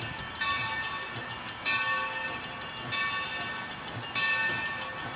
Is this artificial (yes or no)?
no